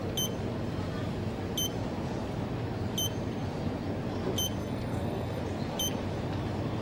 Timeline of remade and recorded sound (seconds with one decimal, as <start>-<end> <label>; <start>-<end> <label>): 0.0-4.6 recorded; 4.6-5.4 remade; 5.4-6.8 recorded